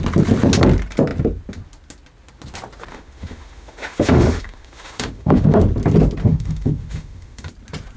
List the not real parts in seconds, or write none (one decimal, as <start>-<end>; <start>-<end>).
2.9-5.6; 6.2-7.5